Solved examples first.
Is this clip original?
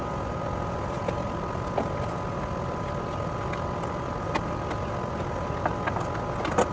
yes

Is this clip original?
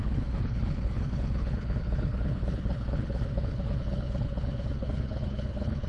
no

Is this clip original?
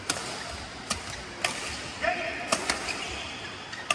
yes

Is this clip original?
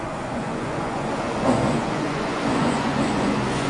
no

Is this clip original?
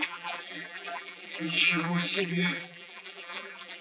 no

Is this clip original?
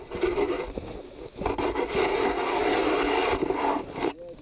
yes